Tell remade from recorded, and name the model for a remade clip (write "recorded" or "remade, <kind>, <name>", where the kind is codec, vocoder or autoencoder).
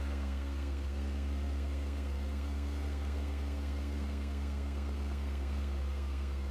remade, codec, SNAC